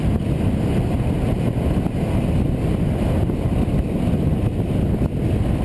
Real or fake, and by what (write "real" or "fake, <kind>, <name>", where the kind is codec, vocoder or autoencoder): real